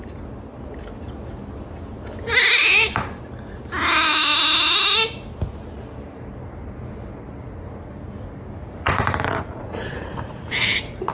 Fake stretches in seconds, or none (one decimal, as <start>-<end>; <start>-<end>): 8.6-11.1